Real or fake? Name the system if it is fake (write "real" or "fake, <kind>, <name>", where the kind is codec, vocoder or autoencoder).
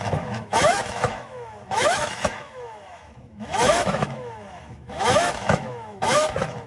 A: fake, autoencoder, DAC-VAE